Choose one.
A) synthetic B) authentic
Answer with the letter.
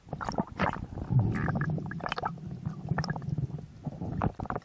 B